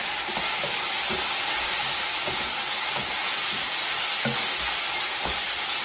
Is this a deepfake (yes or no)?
no